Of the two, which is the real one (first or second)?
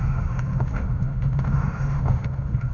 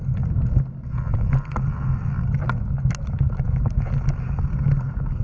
second